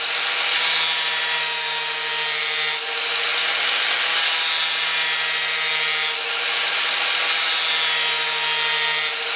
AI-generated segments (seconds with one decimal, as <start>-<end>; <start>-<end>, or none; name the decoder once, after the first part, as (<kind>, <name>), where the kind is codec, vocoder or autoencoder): none